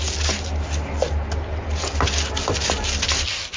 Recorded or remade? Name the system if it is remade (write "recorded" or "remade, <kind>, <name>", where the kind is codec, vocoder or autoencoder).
recorded